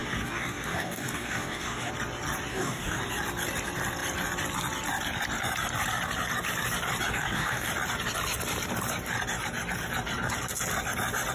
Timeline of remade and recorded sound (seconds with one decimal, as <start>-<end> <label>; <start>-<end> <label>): 0.0-1.9 remade; 1.9-2.5 recorded; 2.5-3.0 remade; 3.0-7.1 recorded; 7.1-7.7 remade; 7.7-11.3 recorded